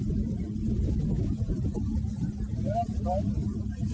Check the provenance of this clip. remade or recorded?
remade